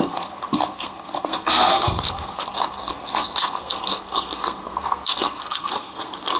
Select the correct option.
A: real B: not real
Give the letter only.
B